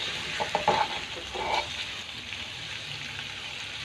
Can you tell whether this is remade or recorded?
recorded